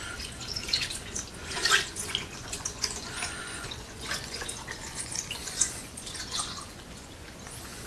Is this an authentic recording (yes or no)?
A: no